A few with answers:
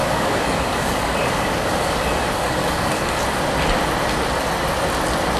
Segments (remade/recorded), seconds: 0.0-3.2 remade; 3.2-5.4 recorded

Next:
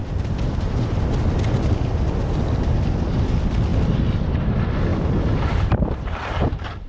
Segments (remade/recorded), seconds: 0.0-1.0 remade; 1.0-3.7 recorded; 3.7-4.5 remade; 4.5-4.9 recorded; 4.9-6.0 remade; 6.0-6.9 recorded